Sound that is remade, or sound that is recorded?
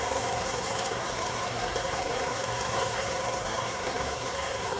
remade